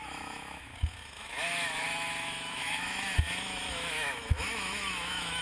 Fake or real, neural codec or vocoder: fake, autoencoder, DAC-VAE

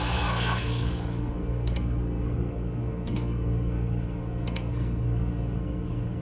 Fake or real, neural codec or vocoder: fake, codec, SNAC